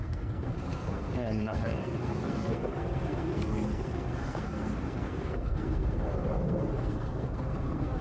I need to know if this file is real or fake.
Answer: fake